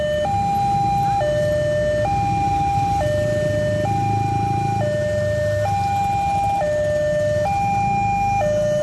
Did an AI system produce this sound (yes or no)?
no